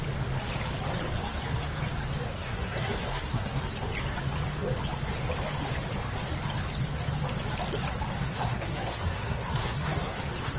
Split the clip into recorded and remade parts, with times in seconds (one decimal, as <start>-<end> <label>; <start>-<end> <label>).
0.0-2.3 recorded; 2.3-3.6 remade; 3.6-8.2 recorded; 8.2-10.2 remade; 10.2-10.6 recorded